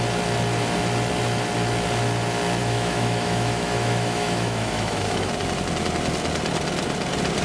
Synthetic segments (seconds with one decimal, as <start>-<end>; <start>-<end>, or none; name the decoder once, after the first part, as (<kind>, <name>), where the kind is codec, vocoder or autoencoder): 2.6-5.3 (autoencoder, DAC-VAE)